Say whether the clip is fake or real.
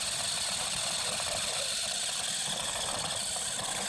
real